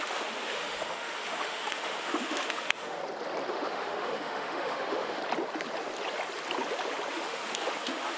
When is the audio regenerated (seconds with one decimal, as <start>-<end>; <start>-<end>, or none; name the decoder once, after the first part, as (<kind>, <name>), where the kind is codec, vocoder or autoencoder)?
0.0-3.0 (autoencoder, DAC-VAE); 3.5-5.2; 7.1-8.2